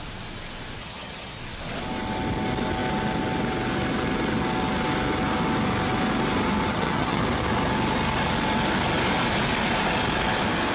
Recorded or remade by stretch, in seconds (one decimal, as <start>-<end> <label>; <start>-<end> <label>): 0.0-0.8 recorded; 0.8-1.4 remade; 1.4-6.7 recorded; 6.7-7.2 remade; 7.2-10.7 recorded